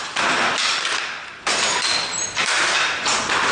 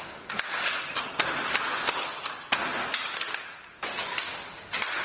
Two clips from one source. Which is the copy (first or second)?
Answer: first